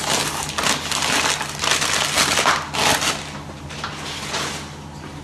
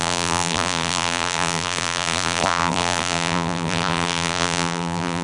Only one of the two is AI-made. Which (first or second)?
second